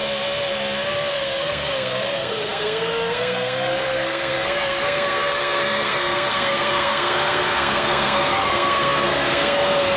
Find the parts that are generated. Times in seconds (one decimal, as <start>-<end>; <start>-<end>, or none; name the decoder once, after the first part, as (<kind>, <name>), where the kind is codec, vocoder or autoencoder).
1.1-10.0 (codec, SNAC)